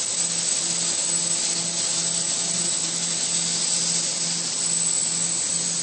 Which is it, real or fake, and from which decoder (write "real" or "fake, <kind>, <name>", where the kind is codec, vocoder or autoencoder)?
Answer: real